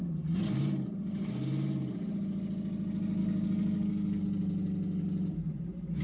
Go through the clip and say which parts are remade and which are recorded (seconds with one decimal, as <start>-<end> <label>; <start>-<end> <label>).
0.0-3.2 recorded; 3.2-4.2 remade; 4.2-6.0 recorded